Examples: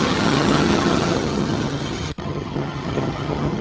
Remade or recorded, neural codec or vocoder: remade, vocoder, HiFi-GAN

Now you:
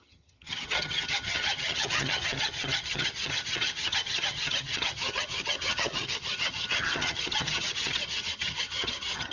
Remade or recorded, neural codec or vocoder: remade, vocoder, HiFi-GAN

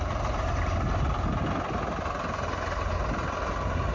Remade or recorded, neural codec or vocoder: recorded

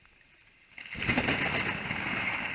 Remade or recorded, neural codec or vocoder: recorded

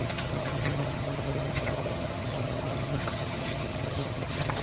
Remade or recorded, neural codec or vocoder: remade, vocoder, HiFi-GAN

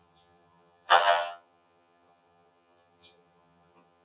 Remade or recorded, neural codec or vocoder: remade, vocoder, HiFi-GAN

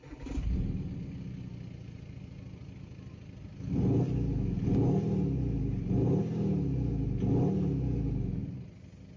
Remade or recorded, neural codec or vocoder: recorded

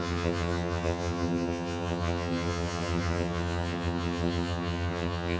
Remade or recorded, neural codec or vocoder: remade, vocoder, HiFi-GAN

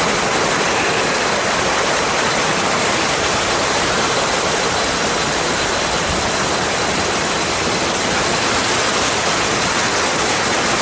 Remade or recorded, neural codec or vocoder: recorded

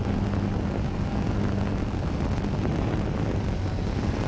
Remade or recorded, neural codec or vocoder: recorded